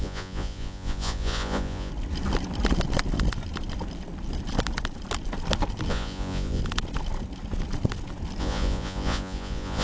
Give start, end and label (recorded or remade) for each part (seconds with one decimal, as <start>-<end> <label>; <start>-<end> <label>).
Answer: 0.0-1.9 remade; 1.9-5.9 recorded; 5.9-6.6 remade; 6.6-8.4 recorded; 8.4-9.8 remade